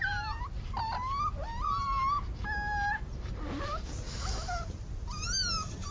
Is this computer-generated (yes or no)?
no